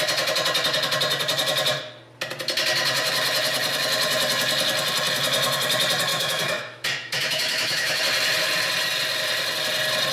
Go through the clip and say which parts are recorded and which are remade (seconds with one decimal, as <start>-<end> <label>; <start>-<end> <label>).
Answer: 0.0-6.1 recorded; 6.1-8.0 remade; 8.0-10.1 recorded